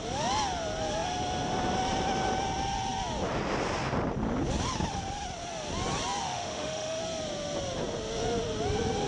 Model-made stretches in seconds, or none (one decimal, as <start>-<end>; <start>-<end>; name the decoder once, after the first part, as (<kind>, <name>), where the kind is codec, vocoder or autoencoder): 6.2-7.0 (autoencoder, DAC-VAE)